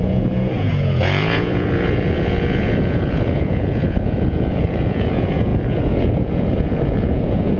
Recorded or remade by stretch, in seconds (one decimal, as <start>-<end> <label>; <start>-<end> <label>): 0.0-7.6 remade